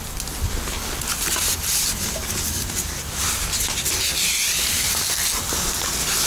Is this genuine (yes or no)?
yes